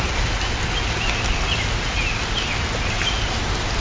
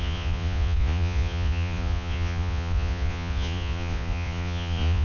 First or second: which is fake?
second